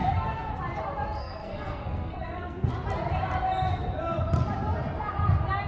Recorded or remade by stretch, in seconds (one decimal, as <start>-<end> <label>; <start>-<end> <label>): 0.0-0.5 remade; 0.5-1.2 recorded; 1.2-2.7 remade; 2.7-5.7 recorded